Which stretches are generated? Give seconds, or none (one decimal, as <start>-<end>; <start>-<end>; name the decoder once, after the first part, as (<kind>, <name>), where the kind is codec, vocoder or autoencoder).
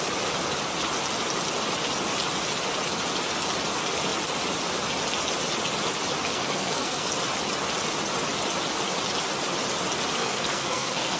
6.3-7.1 (codec, SNAC); 10.2-11.2